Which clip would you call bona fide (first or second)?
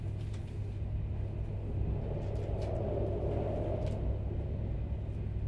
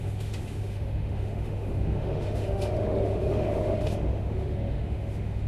first